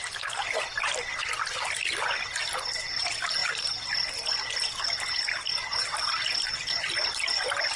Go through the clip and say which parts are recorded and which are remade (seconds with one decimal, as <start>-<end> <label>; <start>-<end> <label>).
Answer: 0.0-7.8 recorded